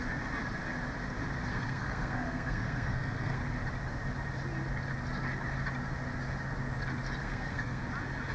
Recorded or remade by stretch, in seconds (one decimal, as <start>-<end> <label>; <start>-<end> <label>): 0.0-1.5 recorded; 1.5-3.4 remade; 3.4-7.2 recorded; 7.2-7.8 remade; 7.8-8.3 recorded

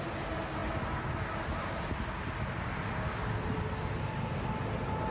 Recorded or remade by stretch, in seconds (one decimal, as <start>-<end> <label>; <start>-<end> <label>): 0.0-5.1 recorded

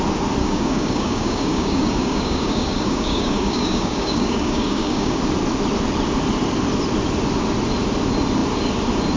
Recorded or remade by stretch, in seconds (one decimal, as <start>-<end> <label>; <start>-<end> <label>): 0.0-0.4 recorded; 0.4-5.2 remade; 5.2-9.2 recorded